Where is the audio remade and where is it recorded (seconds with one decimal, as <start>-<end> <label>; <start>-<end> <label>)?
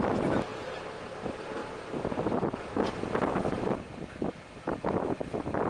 0.0-1.6 recorded; 1.6-2.6 remade; 2.6-3.3 recorded; 3.3-4.1 remade; 4.1-5.7 recorded